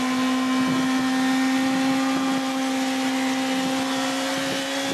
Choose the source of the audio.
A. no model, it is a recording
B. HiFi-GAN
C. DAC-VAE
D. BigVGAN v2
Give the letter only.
A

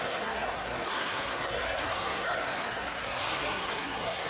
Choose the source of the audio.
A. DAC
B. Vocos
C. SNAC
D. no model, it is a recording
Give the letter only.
C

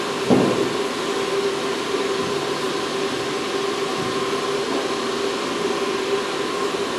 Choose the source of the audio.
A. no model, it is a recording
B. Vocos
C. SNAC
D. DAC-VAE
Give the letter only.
A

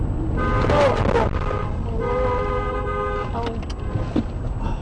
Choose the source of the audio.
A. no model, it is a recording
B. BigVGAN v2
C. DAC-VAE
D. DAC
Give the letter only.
A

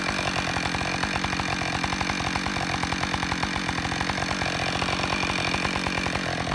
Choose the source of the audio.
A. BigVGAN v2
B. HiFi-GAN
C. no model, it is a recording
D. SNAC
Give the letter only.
C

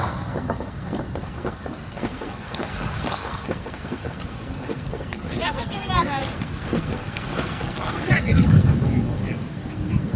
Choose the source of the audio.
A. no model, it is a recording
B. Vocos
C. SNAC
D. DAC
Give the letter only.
C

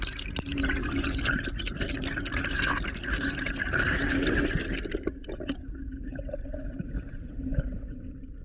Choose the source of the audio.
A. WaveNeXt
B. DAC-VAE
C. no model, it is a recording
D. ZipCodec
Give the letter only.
C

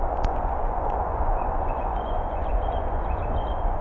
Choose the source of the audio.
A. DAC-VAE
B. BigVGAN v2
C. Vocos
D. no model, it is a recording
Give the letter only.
C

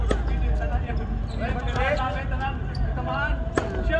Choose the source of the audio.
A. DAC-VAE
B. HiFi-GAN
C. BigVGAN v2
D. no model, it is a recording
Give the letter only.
D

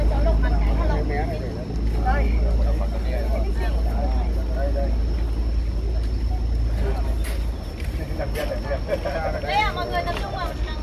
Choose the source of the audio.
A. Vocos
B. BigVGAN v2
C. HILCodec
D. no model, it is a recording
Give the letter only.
D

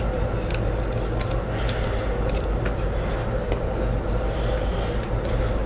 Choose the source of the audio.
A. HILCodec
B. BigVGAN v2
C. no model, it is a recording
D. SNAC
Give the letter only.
C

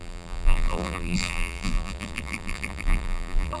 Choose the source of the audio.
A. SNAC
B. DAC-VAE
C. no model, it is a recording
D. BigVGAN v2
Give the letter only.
D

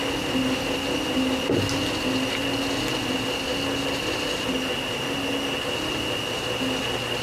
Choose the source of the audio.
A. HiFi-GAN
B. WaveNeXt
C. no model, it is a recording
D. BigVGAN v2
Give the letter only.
C